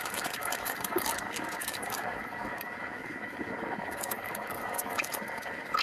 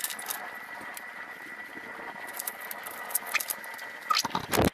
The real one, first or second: second